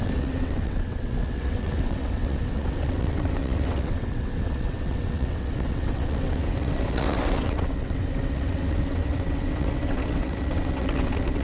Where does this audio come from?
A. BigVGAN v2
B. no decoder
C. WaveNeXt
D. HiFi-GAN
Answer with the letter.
C